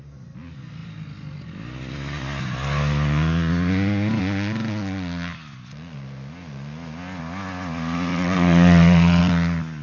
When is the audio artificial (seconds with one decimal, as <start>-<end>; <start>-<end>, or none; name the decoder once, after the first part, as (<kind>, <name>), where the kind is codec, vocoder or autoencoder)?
8.1-9.2 (vocoder, WaveNeXt)